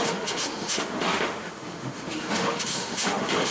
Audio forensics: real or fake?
fake